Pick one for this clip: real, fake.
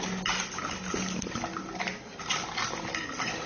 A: real